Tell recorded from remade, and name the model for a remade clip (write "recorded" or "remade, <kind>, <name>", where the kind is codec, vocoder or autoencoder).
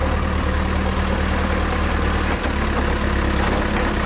recorded